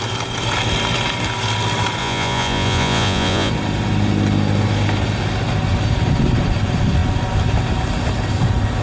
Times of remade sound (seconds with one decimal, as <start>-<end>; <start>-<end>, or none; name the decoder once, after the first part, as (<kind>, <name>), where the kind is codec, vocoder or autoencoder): 2.0-3.5 (vocoder, Vocos)